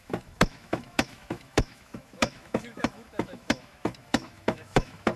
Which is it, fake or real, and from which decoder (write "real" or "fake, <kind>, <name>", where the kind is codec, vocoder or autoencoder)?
fake, autoencoder, DAC-VAE